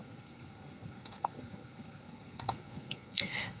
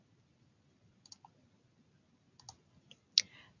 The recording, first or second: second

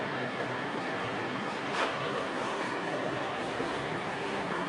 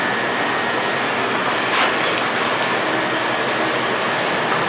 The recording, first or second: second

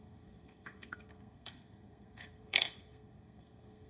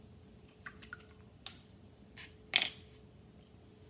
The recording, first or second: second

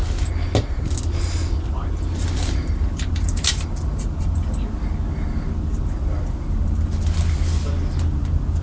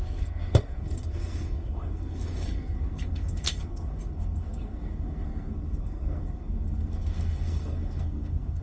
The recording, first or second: first